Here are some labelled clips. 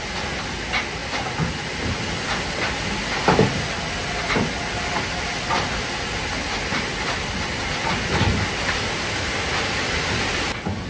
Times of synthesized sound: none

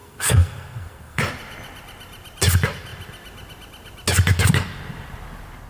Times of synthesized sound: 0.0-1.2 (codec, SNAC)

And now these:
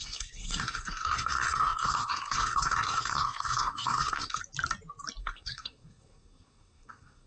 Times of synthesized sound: 0.0-4.4 (codec, SNAC); 5.2-7.3